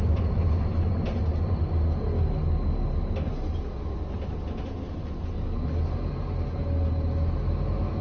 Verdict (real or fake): real